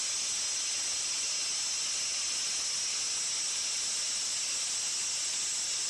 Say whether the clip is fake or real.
real